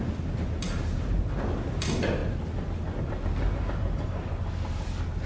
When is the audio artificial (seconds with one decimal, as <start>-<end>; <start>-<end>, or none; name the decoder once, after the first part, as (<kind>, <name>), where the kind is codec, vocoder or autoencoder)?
none